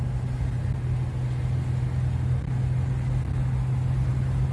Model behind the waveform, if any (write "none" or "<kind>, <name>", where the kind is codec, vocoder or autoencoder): none